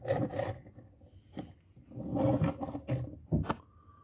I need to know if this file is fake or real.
real